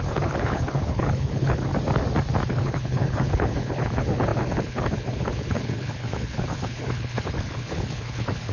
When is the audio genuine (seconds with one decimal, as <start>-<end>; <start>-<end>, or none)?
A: 1.7-2.5